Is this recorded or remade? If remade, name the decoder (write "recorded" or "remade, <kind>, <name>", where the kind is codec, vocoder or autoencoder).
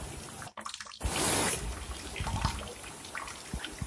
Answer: recorded